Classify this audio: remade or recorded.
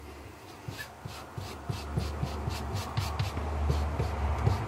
recorded